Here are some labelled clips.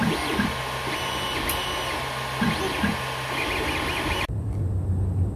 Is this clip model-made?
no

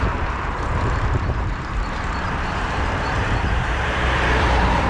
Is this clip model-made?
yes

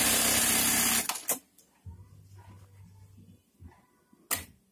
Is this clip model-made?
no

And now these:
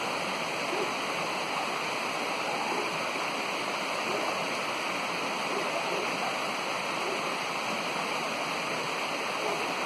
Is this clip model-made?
no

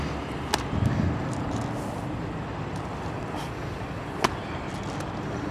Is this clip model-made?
no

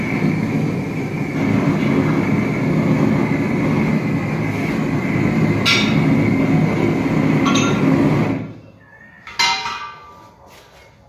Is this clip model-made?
no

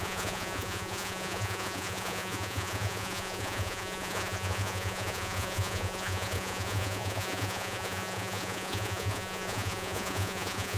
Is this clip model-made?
yes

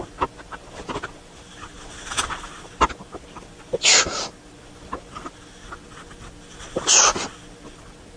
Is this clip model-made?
no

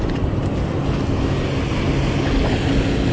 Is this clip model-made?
no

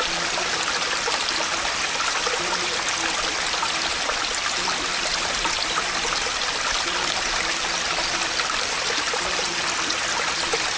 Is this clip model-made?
no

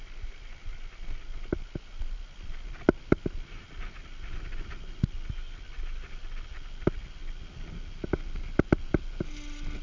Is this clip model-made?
no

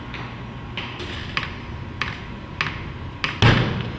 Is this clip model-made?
no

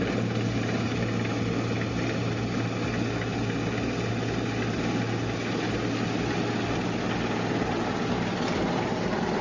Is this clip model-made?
no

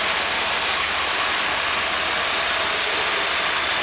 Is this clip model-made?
no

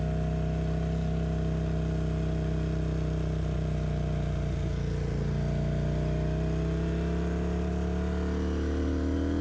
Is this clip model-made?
no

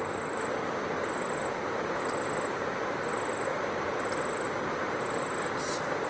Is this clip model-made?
no